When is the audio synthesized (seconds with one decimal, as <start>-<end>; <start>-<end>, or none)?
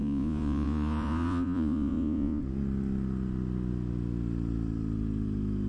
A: 0.0-2.4